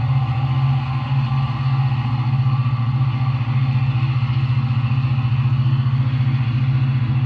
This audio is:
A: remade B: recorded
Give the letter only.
B